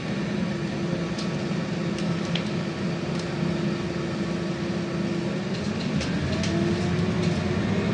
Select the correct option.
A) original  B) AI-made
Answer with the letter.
A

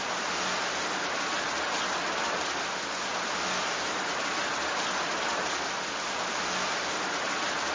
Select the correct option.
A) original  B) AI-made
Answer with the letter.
A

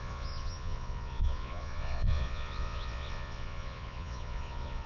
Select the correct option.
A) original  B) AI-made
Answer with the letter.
B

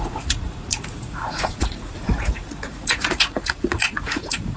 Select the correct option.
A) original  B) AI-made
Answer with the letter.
B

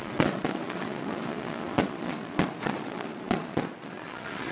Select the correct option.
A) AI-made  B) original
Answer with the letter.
A